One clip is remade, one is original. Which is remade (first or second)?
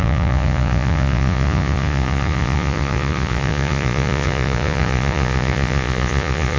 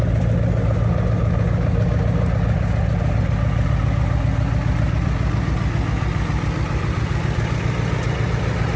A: first